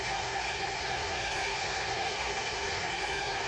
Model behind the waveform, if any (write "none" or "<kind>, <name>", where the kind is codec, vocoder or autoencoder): codec, SNAC